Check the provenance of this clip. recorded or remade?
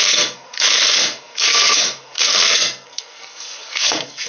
remade